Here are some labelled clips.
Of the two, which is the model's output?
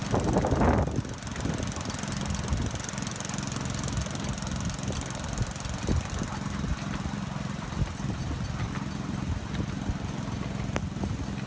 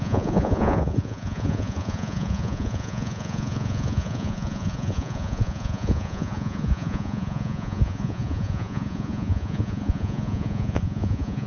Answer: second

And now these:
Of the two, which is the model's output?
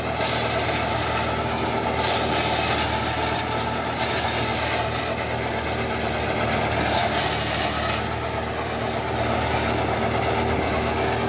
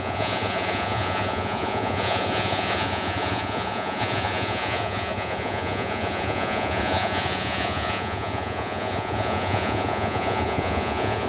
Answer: second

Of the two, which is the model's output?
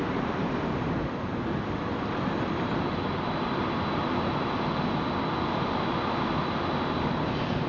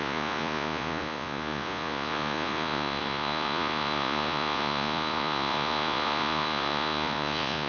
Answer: second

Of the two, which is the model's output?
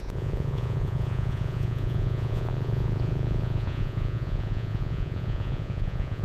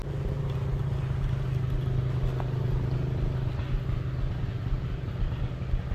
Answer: first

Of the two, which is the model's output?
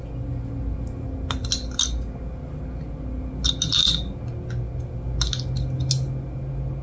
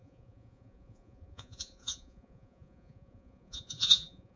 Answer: second